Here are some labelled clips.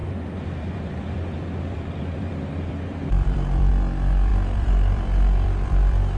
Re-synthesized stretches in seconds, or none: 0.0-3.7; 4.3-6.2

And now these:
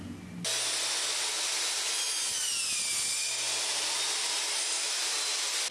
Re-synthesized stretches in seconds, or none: none

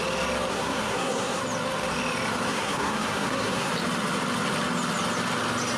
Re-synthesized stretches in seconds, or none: 0.5-1.4; 2.5-3.7

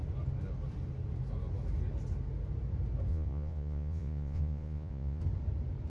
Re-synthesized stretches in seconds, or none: 3.1-5.2

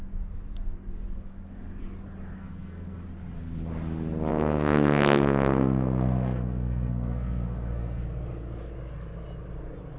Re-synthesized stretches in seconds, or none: 2.3-3.0; 4.3-8.0